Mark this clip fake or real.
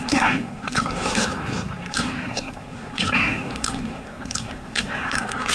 fake